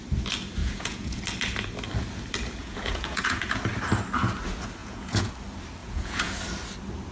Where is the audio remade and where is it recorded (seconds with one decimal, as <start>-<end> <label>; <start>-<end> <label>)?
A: 0.0-0.6 recorded; 0.6-1.2 remade; 1.2-2.6 recorded; 2.6-3.6 remade; 3.6-4.8 recorded; 4.8-5.3 remade; 5.3-5.8 recorded; 5.8-6.4 remade; 6.4-7.1 recorded